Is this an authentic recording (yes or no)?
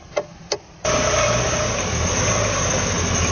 yes